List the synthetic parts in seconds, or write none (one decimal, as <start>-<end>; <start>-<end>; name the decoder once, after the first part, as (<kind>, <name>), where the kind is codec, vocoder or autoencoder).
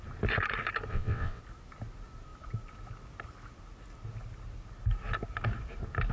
0.9-1.4 (vocoder, WaveNeXt)